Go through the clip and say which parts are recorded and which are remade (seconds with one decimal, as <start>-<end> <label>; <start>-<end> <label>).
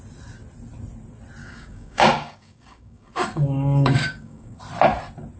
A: 0.0-1.4 recorded; 1.4-4.6 remade; 4.6-5.4 recorded